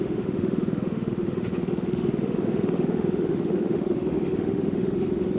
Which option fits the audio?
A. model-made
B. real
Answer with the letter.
A